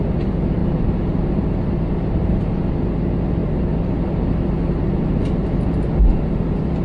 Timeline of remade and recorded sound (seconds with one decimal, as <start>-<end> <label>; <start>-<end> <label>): 0.0-0.6 recorded; 0.6-2.7 remade; 2.7-6.8 recorded

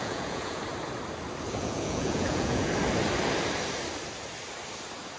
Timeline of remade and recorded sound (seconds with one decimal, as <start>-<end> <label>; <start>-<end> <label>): 0.0-0.6 remade; 0.6-1.6 recorded; 1.6-2.7 remade; 2.7-5.2 recorded